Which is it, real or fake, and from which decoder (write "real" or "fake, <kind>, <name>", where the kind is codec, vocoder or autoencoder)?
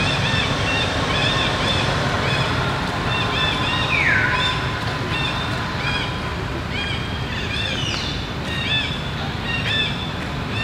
real